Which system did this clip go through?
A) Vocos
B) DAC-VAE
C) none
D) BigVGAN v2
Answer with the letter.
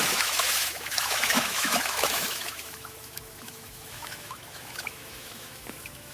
B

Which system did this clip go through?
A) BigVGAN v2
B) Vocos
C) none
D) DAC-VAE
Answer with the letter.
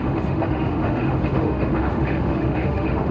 D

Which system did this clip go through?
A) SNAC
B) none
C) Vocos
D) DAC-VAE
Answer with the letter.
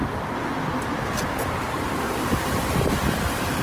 B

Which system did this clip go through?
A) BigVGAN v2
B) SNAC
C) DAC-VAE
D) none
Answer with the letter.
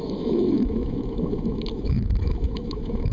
C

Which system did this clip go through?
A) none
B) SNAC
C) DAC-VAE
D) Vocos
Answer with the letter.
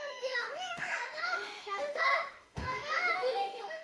C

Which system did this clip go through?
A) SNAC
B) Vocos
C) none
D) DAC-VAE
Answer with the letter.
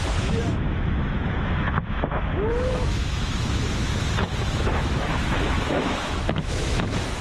D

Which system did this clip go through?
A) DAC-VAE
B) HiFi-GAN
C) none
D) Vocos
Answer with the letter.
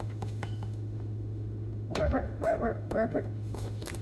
A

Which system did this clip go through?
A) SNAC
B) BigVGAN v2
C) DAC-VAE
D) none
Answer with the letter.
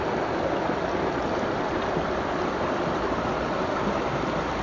D